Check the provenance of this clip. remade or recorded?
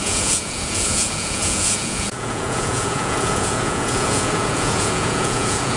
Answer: remade